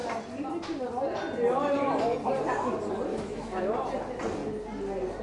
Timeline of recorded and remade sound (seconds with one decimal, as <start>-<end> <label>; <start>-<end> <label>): 0.0-3.1 recorded; 3.1-3.6 remade; 3.6-5.2 recorded